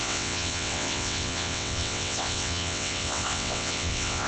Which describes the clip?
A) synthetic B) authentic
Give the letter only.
A